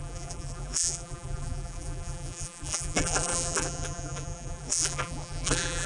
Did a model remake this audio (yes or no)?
yes